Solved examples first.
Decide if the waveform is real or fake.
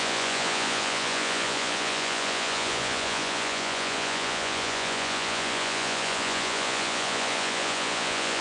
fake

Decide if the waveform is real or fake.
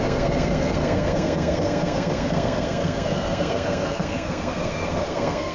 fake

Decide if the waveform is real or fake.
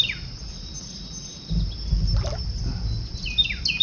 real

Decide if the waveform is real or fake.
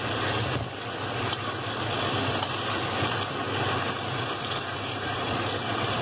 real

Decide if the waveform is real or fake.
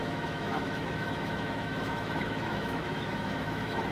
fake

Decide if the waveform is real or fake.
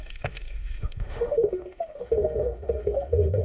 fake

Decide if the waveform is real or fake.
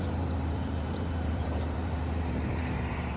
fake